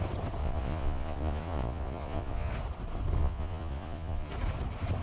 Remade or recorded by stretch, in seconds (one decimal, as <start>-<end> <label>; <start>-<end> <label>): 0.0-0.4 recorded; 0.4-2.5 remade; 2.5-3.2 recorded; 3.2-4.3 remade; 4.3-5.0 recorded

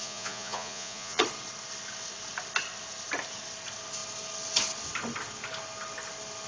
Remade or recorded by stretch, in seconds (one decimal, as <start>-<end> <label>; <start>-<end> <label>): 0.0-1.2 remade; 1.2-6.5 recorded

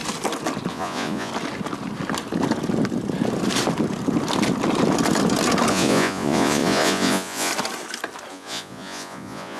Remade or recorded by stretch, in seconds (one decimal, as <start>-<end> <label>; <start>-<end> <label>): 0.0-0.7 recorded; 0.7-1.3 remade; 1.3-5.7 recorded; 5.7-7.5 remade; 7.5-8.3 recorded; 8.3-9.6 remade

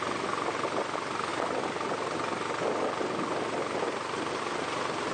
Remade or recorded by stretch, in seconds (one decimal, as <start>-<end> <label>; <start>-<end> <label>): 0.0-5.1 recorded

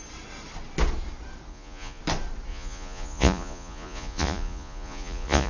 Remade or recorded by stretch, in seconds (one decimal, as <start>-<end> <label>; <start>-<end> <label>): 0.0-1.5 recorded; 1.5-2.0 remade; 2.0-2.5 recorded; 2.5-5.5 remade

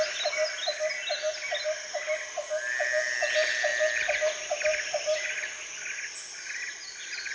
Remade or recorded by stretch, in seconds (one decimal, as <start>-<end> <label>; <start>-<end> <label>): 0.0-7.3 recorded

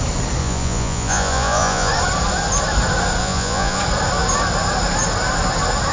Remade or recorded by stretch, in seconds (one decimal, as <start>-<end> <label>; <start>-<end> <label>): 0.0-0.4 recorded; 0.4-1.9 remade; 1.9-3.2 recorded; 3.2-3.8 remade; 3.8-5.9 recorded

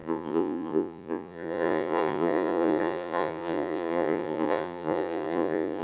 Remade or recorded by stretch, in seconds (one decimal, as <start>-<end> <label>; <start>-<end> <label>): 0.0-5.8 remade